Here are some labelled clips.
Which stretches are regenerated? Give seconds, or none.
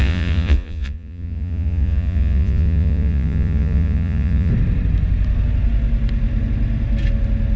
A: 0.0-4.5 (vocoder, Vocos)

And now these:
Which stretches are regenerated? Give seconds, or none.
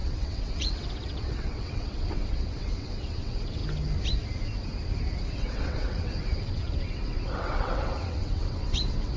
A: 0.0-3.6 (vocoder, WaveNeXt); 5.2-9.2